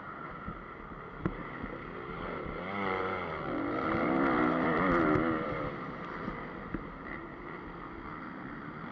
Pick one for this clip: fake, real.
real